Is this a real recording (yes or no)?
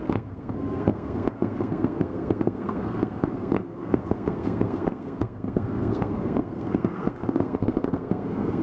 no